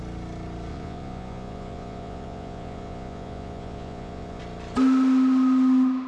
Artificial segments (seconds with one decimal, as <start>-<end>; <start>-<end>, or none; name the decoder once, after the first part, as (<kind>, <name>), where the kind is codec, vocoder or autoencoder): 0.7-4.4 (vocoder, Vocos)